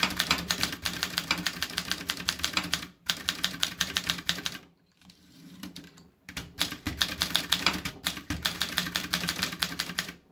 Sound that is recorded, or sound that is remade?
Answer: remade